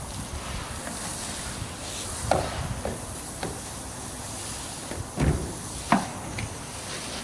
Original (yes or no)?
yes